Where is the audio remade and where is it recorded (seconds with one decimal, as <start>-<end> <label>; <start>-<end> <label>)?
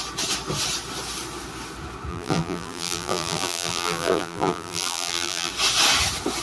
0.0-2.1 recorded; 2.1-5.5 remade; 5.5-6.4 recorded